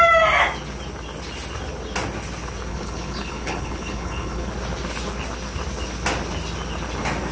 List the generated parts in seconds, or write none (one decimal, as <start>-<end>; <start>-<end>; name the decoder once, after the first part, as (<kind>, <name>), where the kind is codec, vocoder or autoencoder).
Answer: 2.7-4.5 (codec, HILCodec)